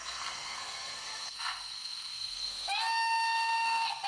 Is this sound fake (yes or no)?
yes